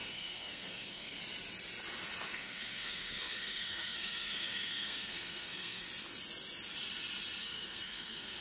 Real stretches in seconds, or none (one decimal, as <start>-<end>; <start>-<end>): 1.2-2.3; 5.8-7.4

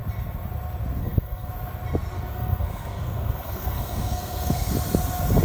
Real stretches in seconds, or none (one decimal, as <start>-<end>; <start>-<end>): 0.0-1.0; 1.5-2.3; 4.7-5.4

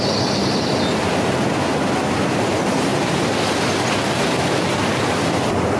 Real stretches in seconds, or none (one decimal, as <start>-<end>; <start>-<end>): 0.0-5.8

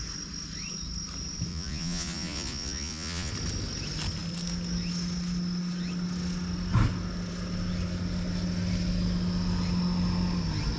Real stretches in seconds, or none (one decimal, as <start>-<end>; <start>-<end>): 0.0-1.5; 3.3-10.8